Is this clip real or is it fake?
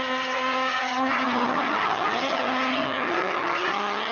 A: fake